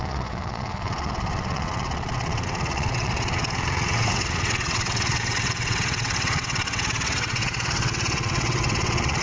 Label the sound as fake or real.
fake